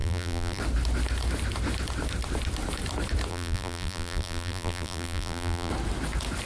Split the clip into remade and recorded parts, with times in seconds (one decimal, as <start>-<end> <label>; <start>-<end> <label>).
0.0-0.6 remade; 0.6-3.3 recorded; 3.3-5.7 remade; 5.7-6.5 recorded